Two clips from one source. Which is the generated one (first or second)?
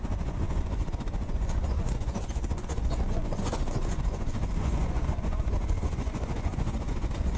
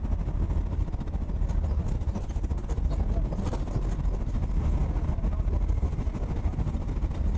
first